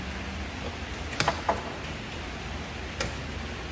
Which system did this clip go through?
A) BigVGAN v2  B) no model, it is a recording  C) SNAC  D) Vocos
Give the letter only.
B